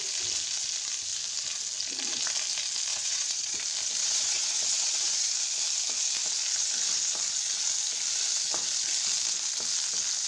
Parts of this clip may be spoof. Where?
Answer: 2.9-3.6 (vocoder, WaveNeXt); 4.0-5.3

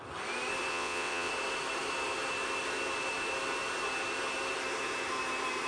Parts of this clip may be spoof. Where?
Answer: 0.7-1.3 (vocoder, WaveNeXt)

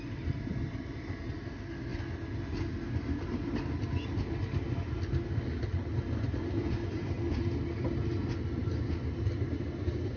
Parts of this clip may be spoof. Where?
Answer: none